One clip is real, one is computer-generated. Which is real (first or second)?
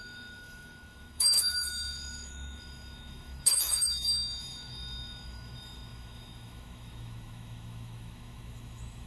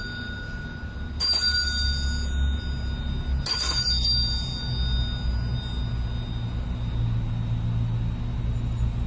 second